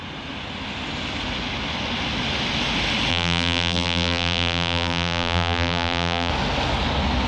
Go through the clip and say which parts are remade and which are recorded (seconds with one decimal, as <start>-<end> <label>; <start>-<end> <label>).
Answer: 0.0-3.1 recorded; 3.1-6.3 remade; 6.3-7.3 recorded